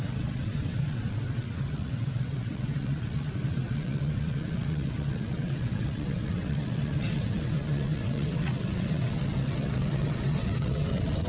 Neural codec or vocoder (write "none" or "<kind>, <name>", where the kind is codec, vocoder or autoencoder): vocoder, WaveNeXt